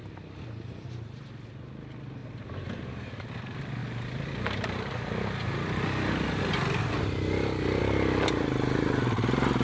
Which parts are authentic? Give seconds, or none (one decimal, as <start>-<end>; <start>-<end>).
0.0-9.6